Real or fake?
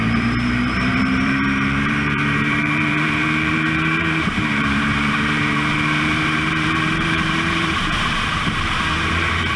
fake